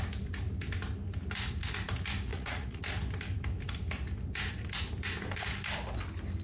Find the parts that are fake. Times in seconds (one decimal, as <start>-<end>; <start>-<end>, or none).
2.3-2.8